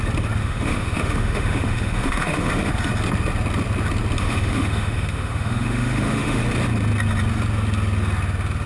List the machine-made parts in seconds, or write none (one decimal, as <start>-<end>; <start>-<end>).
0.4-2.7; 4.2-6.4